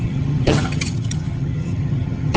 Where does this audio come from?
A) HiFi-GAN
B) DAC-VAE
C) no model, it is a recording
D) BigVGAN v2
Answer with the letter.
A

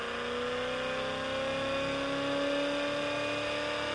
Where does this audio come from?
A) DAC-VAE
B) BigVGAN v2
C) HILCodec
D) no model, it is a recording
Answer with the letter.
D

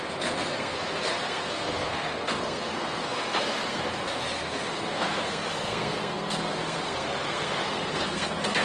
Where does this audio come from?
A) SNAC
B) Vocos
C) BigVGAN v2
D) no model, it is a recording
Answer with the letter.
A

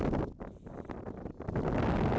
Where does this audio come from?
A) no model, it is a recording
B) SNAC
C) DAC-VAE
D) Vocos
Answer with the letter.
A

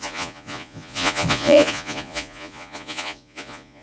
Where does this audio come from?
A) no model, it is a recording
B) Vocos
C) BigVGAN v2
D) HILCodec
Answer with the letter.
B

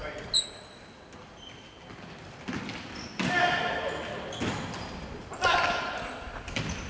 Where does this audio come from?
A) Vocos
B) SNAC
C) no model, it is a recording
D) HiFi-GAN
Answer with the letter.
C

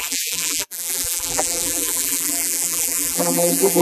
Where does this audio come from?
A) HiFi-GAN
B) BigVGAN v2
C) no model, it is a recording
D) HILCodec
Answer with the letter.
B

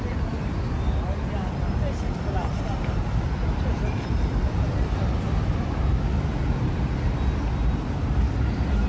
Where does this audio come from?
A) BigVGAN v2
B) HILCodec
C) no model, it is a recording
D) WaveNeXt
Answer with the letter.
C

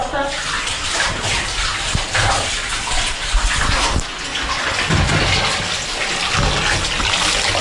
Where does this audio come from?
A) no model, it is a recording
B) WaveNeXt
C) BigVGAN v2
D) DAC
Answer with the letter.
A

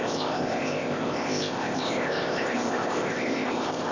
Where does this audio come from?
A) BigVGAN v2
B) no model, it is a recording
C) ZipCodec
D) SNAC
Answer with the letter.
C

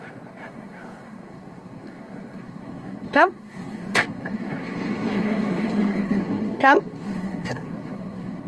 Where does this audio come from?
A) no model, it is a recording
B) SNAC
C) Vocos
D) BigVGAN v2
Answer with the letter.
B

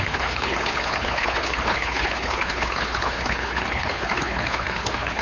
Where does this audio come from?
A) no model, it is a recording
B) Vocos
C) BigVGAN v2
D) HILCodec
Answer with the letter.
D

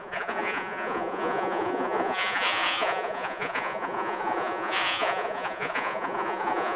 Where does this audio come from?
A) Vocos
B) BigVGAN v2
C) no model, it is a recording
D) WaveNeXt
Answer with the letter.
A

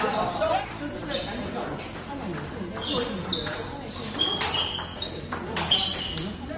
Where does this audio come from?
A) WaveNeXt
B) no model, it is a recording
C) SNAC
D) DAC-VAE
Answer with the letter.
B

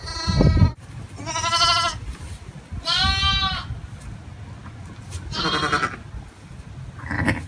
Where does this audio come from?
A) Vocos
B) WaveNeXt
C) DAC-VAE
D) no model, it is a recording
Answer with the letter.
D